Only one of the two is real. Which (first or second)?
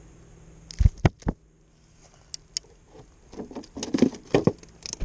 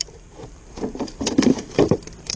first